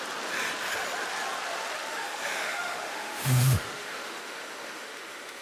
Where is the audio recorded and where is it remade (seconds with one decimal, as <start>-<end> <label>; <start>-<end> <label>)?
0.0-1.9 recorded; 1.9-5.4 remade